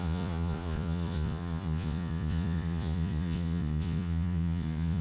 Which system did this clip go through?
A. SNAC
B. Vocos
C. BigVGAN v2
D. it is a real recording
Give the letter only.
B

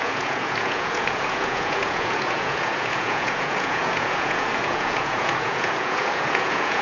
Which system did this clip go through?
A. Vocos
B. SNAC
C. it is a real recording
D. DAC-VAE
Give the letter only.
A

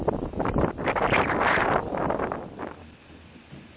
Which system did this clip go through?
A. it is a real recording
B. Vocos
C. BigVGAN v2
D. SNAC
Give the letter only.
A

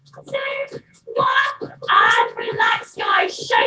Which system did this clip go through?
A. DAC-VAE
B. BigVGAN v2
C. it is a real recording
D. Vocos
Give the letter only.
D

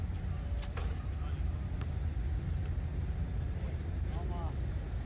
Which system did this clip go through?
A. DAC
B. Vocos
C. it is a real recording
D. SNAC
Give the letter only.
C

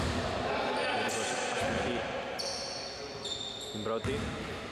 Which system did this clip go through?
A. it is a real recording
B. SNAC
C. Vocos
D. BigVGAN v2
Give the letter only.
A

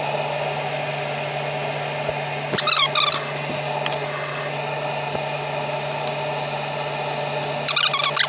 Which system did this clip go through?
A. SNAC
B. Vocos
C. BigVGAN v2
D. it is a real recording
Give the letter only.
D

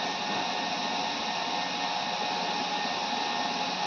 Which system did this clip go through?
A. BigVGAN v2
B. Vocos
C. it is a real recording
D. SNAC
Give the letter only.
C